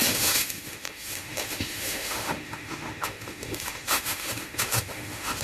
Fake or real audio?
fake